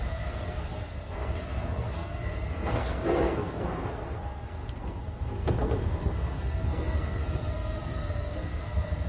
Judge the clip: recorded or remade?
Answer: remade